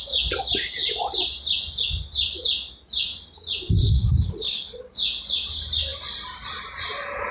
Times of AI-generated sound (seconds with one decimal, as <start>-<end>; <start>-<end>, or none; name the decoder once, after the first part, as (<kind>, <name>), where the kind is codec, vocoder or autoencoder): 3.8-4.8 (codec, HILCodec)